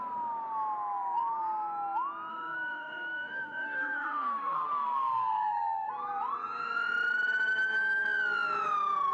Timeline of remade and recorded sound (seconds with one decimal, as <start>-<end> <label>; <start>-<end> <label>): 0.0-2.3 recorded; 2.3-5.9 remade; 5.9-9.1 recorded